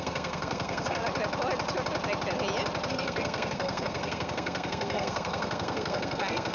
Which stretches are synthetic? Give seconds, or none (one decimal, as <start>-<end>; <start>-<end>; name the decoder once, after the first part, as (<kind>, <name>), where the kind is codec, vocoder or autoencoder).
0.0-1.0 (codec, SNAC); 2.9-6.5